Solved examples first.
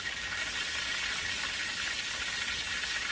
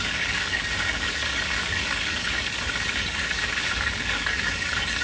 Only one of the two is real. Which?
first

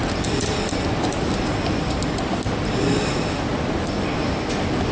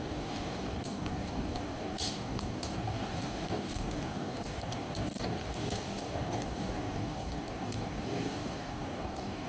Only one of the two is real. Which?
first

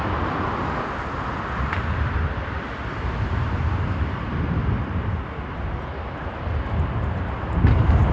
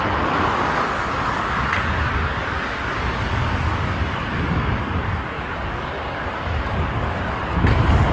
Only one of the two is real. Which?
first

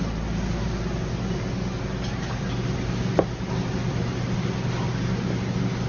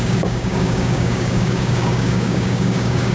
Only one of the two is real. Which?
first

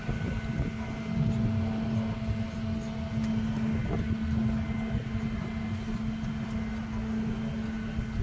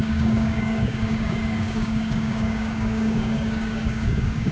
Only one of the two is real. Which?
first